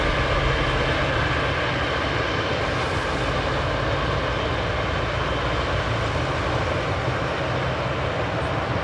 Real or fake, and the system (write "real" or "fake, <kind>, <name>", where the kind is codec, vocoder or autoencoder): real